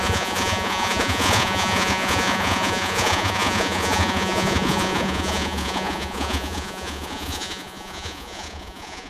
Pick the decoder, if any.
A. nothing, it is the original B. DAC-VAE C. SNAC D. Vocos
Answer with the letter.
D